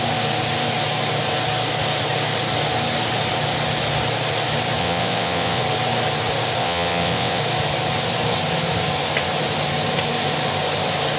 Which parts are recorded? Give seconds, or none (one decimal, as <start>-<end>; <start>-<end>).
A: 0.0-4.8; 5.6-6.6; 7.4-11.2